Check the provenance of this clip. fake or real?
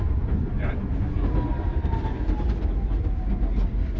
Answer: real